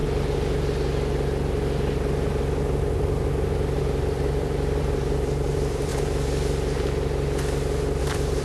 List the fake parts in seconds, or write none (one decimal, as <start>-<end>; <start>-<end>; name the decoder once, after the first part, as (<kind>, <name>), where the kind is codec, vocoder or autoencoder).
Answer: 4.0-5.9 (vocoder, BigVGAN v2); 8.0-8.4

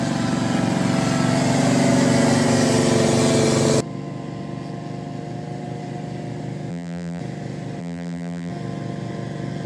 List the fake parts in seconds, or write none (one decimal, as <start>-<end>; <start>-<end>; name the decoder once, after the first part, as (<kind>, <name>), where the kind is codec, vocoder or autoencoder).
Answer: 6.7-7.2 (vocoder, BigVGAN v2); 7.8-8.5

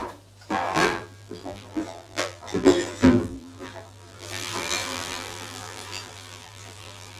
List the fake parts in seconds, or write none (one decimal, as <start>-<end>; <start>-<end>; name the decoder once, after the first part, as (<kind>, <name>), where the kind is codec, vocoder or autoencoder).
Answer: 0.5-7.2 (vocoder, BigVGAN v2)

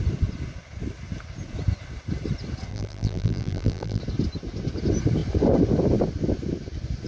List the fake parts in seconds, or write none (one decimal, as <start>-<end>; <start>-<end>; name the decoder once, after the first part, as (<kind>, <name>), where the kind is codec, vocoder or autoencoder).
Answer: 2.7-4.0 (vocoder, BigVGAN v2)

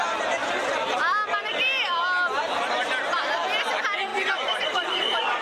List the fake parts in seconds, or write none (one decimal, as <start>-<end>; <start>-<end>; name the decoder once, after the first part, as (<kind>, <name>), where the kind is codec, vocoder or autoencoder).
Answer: 4.1-5.0 (vocoder, BigVGAN v2)